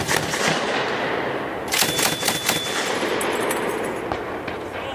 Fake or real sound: real